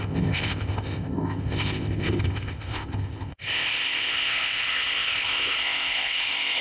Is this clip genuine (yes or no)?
no